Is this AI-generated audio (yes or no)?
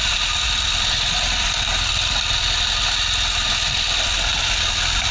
no